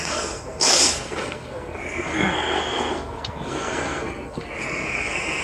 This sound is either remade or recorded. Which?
remade